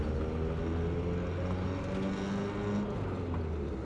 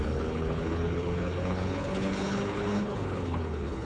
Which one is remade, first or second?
second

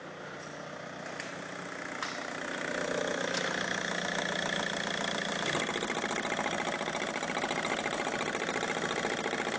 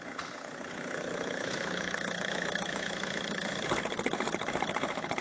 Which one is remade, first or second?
second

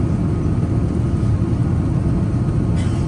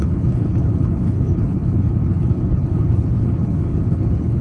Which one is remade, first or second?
second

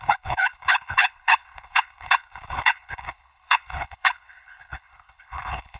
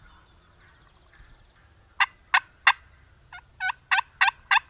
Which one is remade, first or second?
first